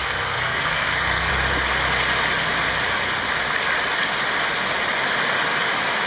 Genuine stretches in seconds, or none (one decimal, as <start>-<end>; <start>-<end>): 1.3-6.1